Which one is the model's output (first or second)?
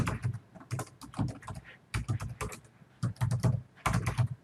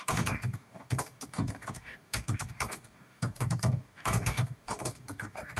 second